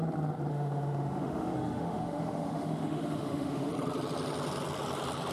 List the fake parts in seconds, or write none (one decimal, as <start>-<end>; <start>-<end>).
0.5-3.7